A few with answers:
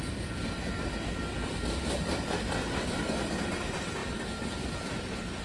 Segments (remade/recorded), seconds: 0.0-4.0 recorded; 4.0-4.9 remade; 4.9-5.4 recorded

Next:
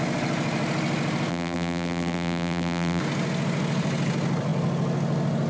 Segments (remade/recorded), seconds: 0.0-1.3 recorded; 1.3-3.0 remade; 3.0-5.5 recorded

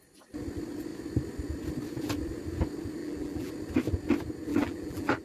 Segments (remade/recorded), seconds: 0.0-3.0 recorded; 3.0-3.5 remade; 3.5-4.5 recorded; 4.5-5.2 remade